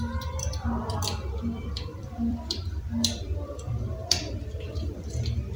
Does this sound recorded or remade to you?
remade